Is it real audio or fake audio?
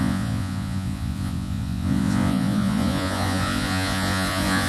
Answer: fake